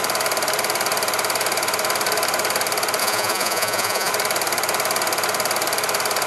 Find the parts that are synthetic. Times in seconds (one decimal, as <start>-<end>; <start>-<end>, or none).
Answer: 3.0-4.1

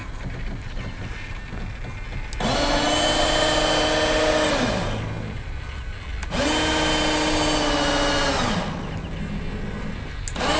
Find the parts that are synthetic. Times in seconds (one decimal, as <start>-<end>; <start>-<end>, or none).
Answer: none

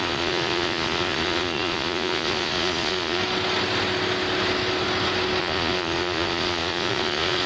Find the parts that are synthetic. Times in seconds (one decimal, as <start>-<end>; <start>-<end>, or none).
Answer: 0.0-3.2; 5.4-7.5

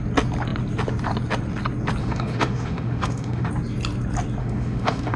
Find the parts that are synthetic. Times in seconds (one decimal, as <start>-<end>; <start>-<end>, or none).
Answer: 2.0-3.5; 4.4-5.2

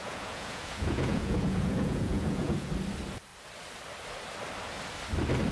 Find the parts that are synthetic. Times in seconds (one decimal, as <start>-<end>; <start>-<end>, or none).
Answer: 0.0-2.7